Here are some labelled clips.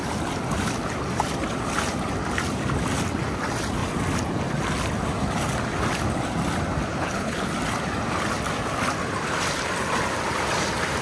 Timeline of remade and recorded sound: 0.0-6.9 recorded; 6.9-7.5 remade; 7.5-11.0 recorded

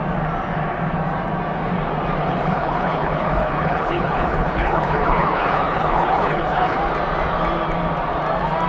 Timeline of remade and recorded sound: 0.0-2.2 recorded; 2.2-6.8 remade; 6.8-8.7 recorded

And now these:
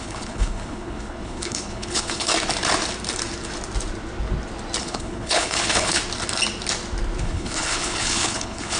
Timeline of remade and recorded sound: 0.0-2.3 remade; 2.3-4.8 recorded; 4.8-6.0 remade; 6.0-7.2 recorded; 7.2-8.8 remade